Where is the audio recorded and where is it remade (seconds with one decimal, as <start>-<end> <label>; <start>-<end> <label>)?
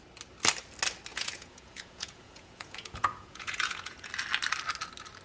0.0-1.1 recorded; 1.1-4.1 remade; 4.1-5.2 recorded